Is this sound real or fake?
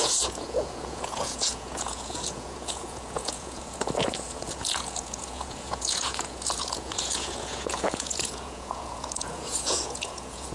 fake